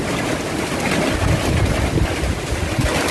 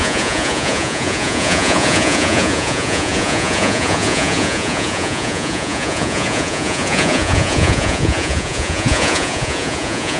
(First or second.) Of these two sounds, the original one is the first